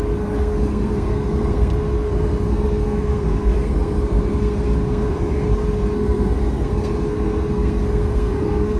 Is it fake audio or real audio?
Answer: fake